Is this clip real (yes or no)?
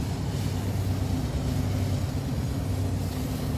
yes